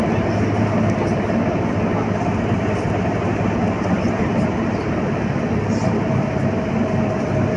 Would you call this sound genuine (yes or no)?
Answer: yes